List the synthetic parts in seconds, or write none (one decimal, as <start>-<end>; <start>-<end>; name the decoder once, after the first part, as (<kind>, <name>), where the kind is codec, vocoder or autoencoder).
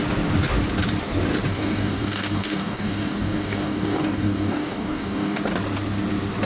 1.5-5.4 (codec, DAC)